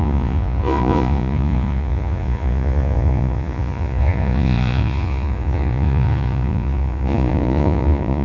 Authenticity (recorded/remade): remade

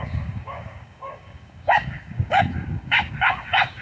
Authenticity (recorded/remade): remade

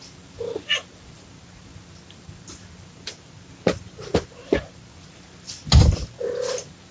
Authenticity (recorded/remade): recorded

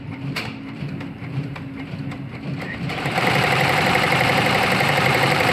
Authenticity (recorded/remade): remade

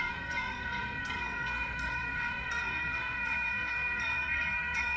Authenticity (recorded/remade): remade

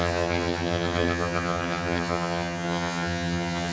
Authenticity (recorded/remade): remade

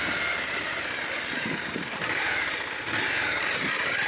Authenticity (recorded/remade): recorded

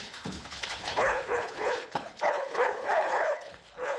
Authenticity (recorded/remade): remade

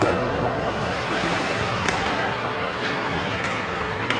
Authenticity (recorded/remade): remade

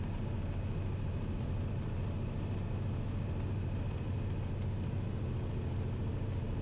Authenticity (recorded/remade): recorded